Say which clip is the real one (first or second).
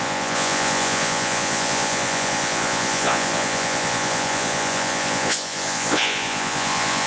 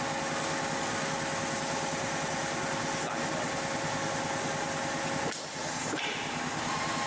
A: second